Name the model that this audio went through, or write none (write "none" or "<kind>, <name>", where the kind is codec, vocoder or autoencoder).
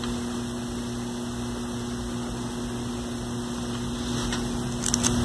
none